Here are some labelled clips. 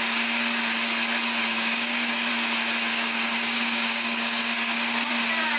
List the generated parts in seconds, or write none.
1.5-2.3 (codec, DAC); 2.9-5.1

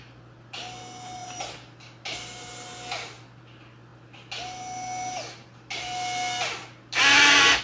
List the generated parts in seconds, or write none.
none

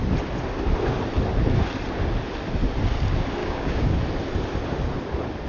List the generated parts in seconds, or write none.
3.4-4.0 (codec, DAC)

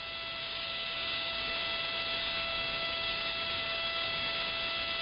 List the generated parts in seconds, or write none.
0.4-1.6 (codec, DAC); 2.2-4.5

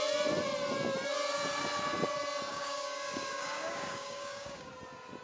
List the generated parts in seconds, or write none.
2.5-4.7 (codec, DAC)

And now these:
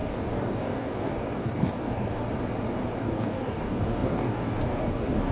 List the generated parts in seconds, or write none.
0.0-2.2 (codec, DAC); 3.0-5.3